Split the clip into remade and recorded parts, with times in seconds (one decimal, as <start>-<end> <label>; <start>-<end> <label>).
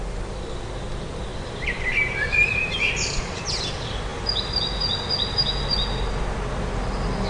0.0-1.3 recorded; 1.3-3.5 remade; 3.5-7.3 recorded